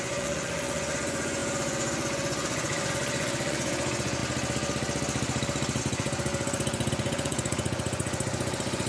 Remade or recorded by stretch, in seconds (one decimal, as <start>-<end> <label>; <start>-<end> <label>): 0.0-4.2 remade; 4.2-5.8 recorded; 5.8-8.9 remade